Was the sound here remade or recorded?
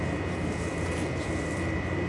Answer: remade